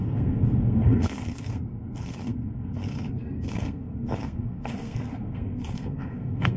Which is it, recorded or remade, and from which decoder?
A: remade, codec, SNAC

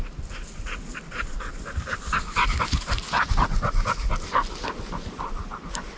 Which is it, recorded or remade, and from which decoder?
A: recorded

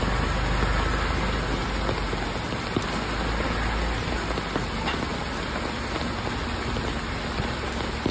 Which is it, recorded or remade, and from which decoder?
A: recorded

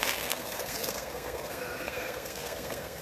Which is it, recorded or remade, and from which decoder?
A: remade, codec, SNAC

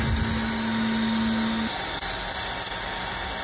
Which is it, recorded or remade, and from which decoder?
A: recorded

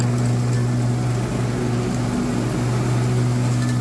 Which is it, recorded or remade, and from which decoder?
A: recorded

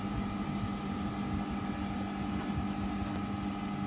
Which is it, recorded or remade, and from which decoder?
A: recorded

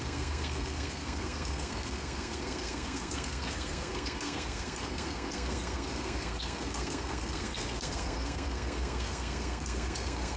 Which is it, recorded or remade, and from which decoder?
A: remade, codec, SNAC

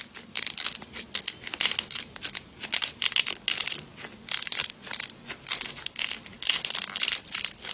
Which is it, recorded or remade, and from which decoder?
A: recorded